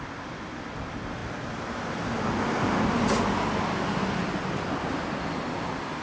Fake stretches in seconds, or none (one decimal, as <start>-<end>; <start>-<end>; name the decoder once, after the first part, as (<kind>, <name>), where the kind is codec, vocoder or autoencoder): none

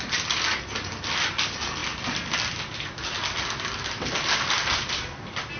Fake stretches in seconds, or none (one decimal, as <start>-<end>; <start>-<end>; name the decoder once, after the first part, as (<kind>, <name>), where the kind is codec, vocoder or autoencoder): none